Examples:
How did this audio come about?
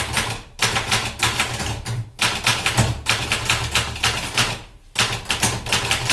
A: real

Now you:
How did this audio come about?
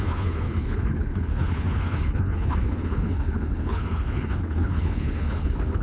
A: fake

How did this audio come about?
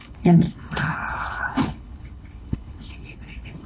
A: fake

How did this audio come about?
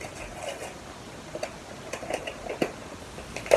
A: real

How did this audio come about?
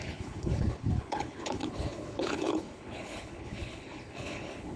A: fake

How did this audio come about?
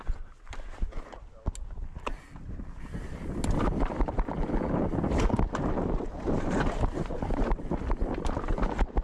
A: real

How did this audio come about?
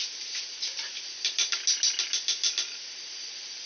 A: real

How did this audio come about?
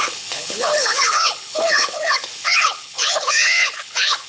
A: fake